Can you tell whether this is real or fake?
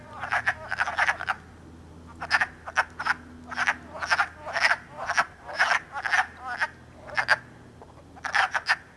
real